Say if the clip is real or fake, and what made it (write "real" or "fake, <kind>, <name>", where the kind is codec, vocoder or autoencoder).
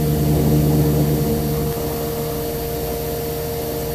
real